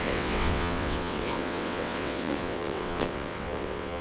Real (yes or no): no